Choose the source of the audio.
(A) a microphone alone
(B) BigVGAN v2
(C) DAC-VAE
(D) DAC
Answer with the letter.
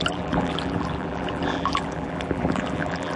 B